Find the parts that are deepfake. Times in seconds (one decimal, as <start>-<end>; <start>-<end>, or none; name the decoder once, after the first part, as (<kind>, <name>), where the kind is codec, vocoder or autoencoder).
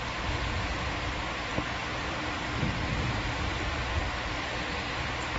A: 1.8-3.6 (vocoder, BigVGAN v2)